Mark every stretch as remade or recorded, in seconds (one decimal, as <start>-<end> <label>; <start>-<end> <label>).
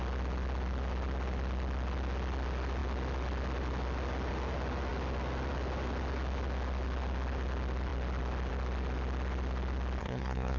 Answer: 0.0-10.0 recorded; 10.0-10.6 remade